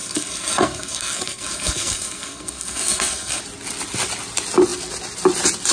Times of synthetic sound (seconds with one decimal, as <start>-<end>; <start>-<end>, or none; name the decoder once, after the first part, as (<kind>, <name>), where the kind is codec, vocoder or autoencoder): 0.0-3.4 (codec, SNAC)